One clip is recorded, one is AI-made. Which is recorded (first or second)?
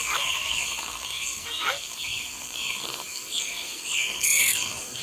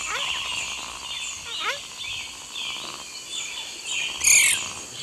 second